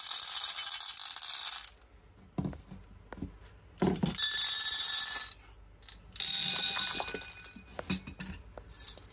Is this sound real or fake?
real